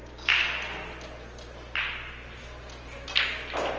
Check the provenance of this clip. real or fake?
real